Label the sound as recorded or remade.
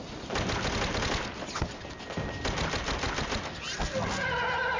recorded